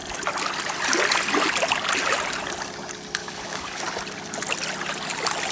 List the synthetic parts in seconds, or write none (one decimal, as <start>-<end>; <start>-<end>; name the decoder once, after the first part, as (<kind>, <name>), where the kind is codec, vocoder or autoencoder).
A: 3.2-3.8 (codec, DAC)